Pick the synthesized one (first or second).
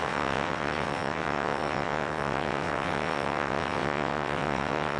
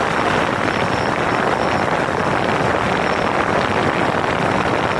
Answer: first